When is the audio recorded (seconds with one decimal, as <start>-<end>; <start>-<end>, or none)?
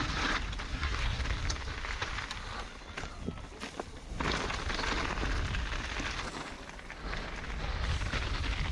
0.0-0.7; 1.2-8.7